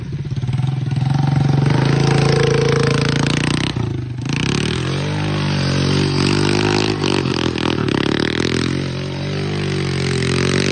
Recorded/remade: recorded